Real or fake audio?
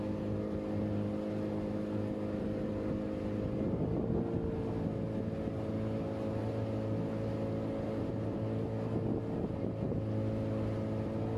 real